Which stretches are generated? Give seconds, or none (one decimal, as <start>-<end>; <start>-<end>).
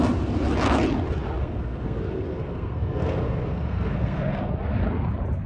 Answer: 1.4-4.5